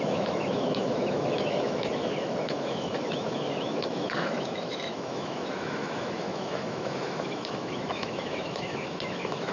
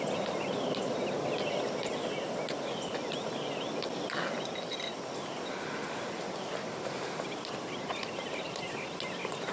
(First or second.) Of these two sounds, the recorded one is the second